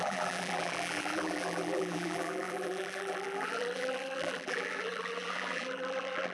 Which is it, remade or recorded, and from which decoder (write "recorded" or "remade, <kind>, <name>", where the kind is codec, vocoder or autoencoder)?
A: remade, vocoder, BigVGAN v2